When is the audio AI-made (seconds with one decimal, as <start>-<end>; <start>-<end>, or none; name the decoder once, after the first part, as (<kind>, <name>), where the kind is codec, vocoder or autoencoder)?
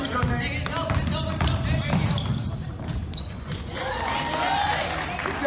3.0-3.9 (vocoder, Vocos)